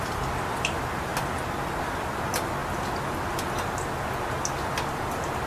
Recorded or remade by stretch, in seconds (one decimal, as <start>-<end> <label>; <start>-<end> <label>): 0.0-5.5 recorded